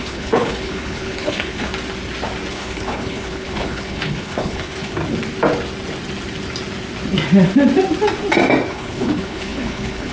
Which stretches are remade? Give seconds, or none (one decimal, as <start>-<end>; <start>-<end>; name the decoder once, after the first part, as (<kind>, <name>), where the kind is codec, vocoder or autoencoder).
0.0-1.7 (codec, HILCodec); 2.5-5.0; 8.7-10.1